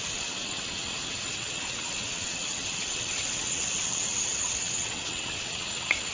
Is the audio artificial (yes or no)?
yes